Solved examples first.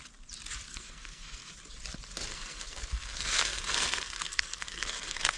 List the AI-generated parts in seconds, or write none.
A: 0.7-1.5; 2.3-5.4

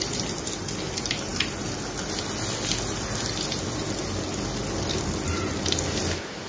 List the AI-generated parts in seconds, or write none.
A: none

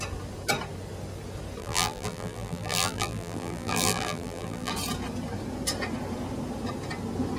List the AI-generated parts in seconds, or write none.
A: 1.6-4.7

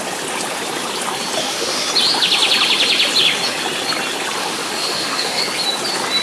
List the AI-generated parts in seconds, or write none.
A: 1.4-1.9; 4.4-5.4

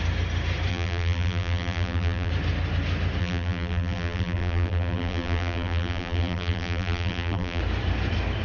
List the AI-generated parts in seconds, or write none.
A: 0.7-2.3; 3.2-7.6

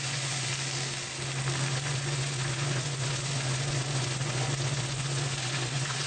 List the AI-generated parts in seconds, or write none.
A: 0.0-0.5; 1.7-6.1